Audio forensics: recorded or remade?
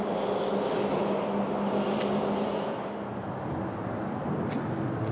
recorded